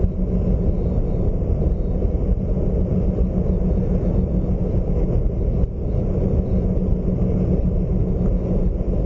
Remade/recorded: recorded